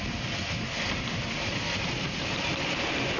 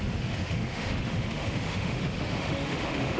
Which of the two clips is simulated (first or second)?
second